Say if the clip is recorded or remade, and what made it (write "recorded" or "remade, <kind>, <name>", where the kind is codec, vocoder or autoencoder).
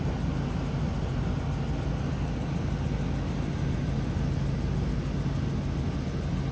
recorded